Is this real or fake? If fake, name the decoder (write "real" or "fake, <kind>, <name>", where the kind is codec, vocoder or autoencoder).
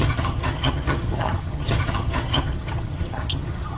fake, vocoder, HiFi-GAN